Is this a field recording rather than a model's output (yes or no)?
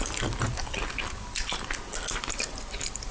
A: yes